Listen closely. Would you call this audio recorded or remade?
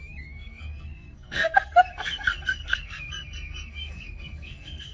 remade